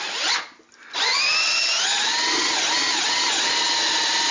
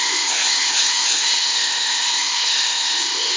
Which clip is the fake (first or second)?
second